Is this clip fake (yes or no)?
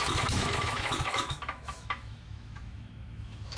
yes